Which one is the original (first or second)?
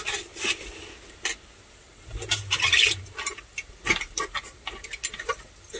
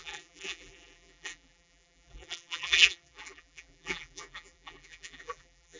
first